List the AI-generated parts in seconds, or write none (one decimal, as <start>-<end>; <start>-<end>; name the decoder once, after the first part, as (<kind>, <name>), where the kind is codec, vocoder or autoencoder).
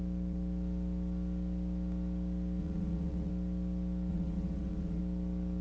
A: 2.6-3.3 (vocoder, WaveNeXt); 4.1-5.0